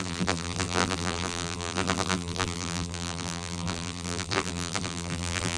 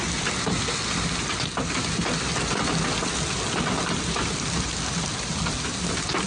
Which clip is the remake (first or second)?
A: first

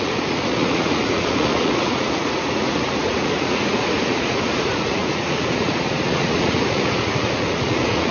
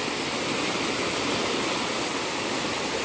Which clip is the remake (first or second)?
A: first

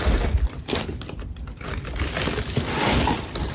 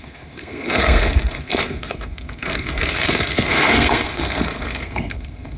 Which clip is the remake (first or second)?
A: second